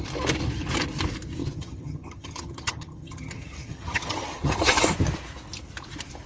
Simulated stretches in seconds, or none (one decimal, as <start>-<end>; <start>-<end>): 1.4-4.7